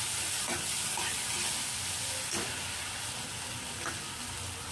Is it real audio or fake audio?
real